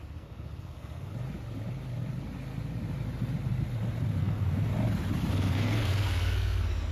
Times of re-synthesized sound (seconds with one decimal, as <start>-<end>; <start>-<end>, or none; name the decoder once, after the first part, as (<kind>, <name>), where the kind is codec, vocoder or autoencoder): 0.0-1.1 (codec, SNAC); 4.2-4.7; 5.3-6.9